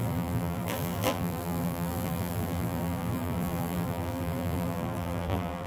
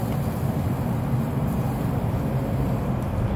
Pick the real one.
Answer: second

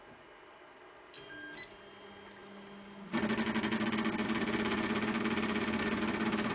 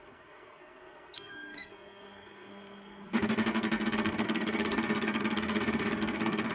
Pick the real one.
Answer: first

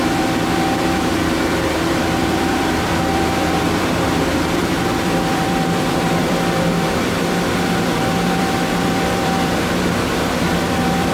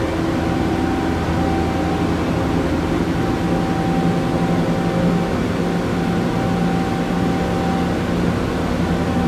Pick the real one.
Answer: second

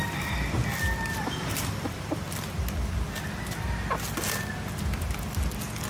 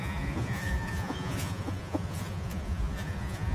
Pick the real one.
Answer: first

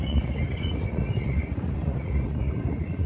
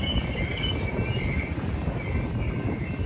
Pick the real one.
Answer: second